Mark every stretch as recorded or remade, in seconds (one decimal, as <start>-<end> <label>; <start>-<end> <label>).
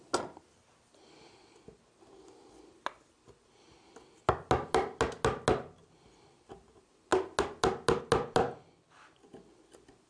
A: 0.0-10.1 recorded